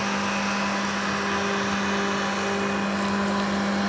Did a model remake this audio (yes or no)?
no